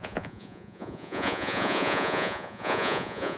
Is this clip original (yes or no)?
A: no